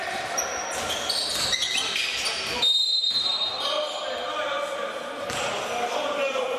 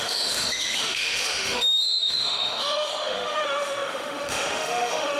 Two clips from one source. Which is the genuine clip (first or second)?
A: first